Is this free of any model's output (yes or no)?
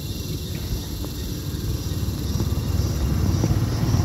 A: yes